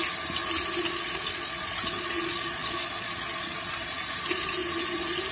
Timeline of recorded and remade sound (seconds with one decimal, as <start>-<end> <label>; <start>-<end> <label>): 0.0-0.8 recorded; 0.8-4.0 remade; 4.0-5.3 recorded